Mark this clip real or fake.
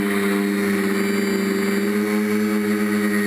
real